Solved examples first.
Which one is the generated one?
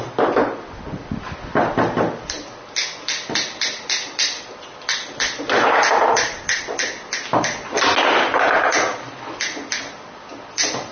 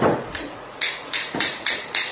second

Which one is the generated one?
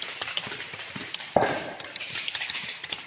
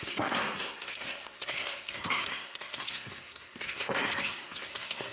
second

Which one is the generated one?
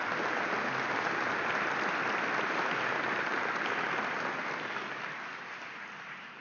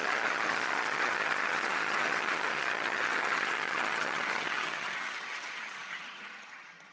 second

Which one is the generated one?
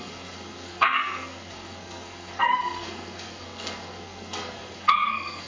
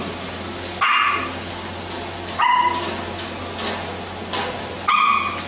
first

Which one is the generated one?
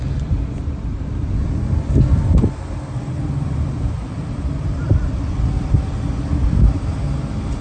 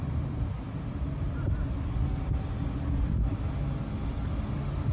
first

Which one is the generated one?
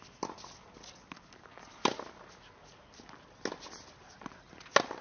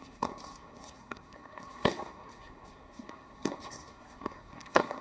second